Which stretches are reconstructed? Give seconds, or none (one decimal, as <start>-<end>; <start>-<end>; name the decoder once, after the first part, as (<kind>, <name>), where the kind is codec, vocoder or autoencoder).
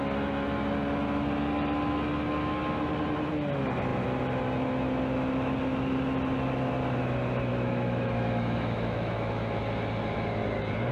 7.5-9.6 (autoencoder, DAC-VAE)